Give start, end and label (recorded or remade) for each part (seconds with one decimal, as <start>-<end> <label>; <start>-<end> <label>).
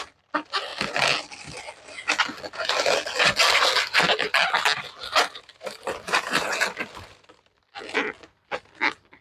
0.0-5.5 recorded; 5.5-6.5 remade; 6.5-9.2 recorded